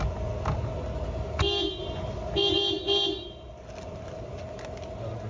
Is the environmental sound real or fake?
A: real